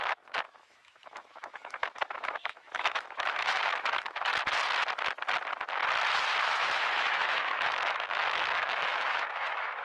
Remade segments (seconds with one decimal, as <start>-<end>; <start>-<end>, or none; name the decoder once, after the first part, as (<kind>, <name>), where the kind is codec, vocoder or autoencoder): 0.0-4.3 (autoencoder, DAC-VAE); 6.4-9.8